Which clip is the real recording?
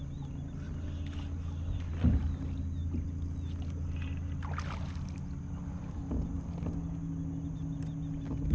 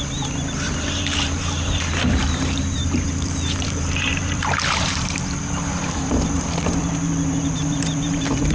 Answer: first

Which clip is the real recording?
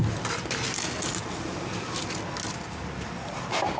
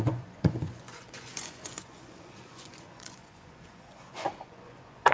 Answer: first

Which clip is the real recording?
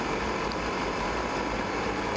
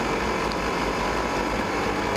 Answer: second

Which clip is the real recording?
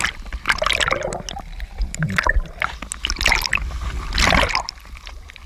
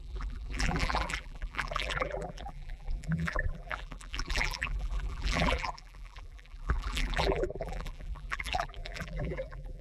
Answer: first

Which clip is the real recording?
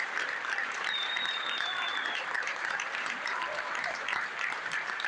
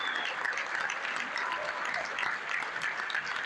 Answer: second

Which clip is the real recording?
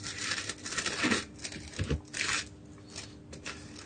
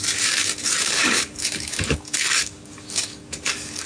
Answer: first